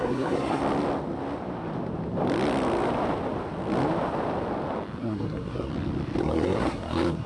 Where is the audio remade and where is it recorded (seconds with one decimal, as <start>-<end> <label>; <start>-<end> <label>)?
0.0-0.6 remade; 0.6-5.0 recorded; 5.0-5.7 remade; 5.7-6.2 recorded; 6.2-7.3 remade

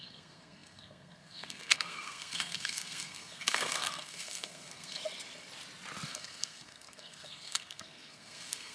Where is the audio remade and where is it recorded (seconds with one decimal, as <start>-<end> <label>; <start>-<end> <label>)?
0.0-5.0 remade; 5.0-6.1 recorded; 6.1-8.7 remade

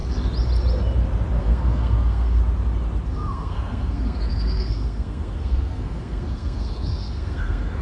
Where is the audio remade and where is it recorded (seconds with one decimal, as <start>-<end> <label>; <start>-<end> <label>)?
0.0-1.4 recorded; 1.4-2.4 remade; 2.4-3.1 recorded; 3.1-7.8 remade

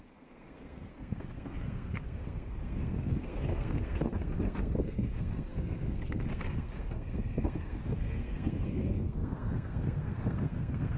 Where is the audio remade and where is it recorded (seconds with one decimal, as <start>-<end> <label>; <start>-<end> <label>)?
0.0-11.0 remade

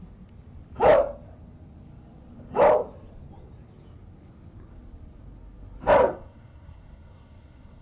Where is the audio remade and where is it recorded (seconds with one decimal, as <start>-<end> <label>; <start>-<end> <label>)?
0.0-6.0 recorded; 6.0-7.8 remade